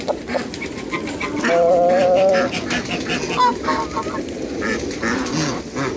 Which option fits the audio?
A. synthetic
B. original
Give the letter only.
B